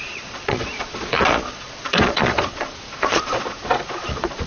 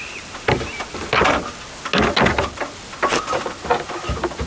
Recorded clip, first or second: second